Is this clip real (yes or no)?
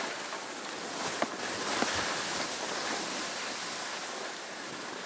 yes